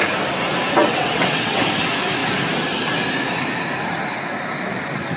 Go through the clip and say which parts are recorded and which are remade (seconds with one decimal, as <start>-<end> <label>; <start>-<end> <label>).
0.0-0.8 recorded; 0.8-1.6 remade; 1.6-5.2 recorded